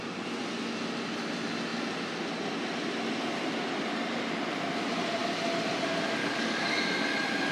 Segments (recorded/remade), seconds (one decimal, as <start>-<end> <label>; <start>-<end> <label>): 0.0-6.2 recorded; 6.2-6.7 remade; 6.7-7.5 recorded